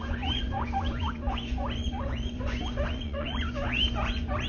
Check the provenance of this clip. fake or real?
fake